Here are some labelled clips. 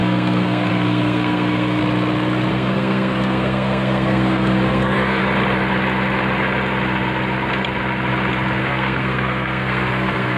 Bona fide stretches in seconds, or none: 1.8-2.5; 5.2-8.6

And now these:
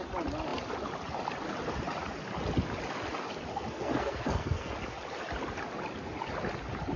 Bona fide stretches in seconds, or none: 0.0-3.5; 4.7-7.0

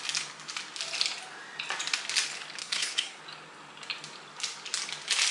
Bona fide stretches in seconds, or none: 0.0-2.6; 3.2-5.3

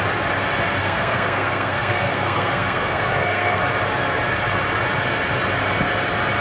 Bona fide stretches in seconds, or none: 0.0-0.8; 3.6-6.4

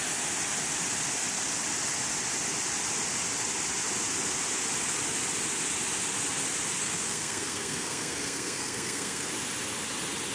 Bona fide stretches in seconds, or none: 0.0-6.8; 9.3-10.3